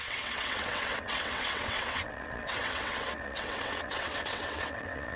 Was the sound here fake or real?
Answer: fake